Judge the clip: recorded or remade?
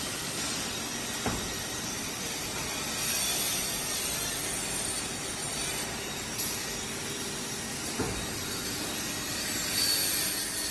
remade